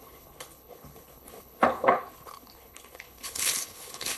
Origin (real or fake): fake